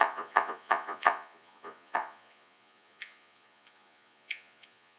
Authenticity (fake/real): fake